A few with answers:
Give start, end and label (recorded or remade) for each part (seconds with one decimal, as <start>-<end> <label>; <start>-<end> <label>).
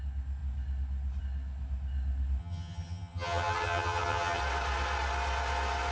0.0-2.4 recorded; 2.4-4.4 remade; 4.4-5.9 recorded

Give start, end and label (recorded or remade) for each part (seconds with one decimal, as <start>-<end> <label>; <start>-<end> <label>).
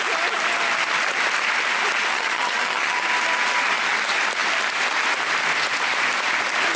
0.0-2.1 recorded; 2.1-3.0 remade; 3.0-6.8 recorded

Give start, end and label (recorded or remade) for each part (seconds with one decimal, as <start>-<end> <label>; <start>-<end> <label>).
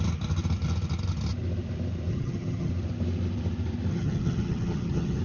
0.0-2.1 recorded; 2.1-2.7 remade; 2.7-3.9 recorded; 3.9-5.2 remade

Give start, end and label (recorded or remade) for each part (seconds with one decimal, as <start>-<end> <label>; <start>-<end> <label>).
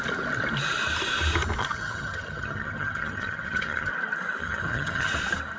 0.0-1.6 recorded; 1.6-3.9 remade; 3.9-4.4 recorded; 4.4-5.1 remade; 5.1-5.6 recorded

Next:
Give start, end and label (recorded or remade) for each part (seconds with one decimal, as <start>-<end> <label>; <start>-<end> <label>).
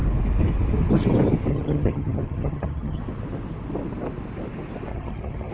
0.0-1.5 recorded; 1.5-3.0 remade; 3.0-4.9 recorded; 4.9-5.5 remade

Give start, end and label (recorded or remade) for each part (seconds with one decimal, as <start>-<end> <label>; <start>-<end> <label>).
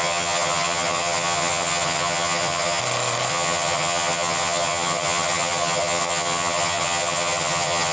0.0-2.8 remade; 2.8-3.3 recorded; 3.3-7.9 remade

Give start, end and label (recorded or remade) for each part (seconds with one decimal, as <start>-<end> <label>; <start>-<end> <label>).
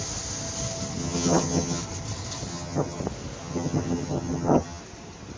0.0-1.0 recorded; 1.0-1.8 remade; 1.8-2.5 recorded; 2.5-3.0 remade; 3.0-3.4 recorded; 3.4-4.8 remade; 4.8-5.4 recorded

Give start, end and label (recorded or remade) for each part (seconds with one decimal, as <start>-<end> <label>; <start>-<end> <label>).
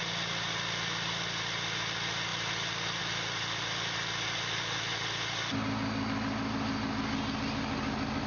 0.0-8.3 recorded